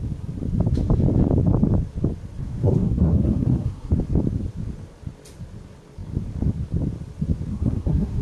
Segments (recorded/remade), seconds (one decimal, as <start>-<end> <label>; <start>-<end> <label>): 0.0-2.4 recorded; 2.4-3.9 remade; 3.9-7.5 recorded; 7.5-8.2 remade